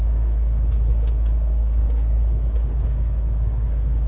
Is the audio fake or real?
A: fake